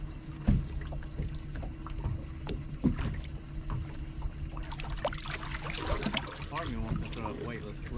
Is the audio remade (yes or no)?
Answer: no